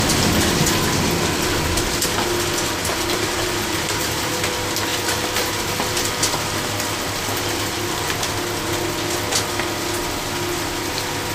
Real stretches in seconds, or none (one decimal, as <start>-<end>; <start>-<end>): 0.0-2.8; 4.3-11.3